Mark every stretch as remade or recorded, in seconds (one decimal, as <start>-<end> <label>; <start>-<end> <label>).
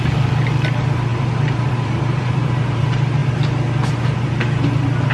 0.0-1.1 recorded; 1.1-2.8 remade; 2.8-5.1 recorded